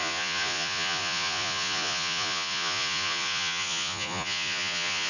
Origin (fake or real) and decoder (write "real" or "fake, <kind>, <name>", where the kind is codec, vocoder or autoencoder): fake, vocoder, Vocos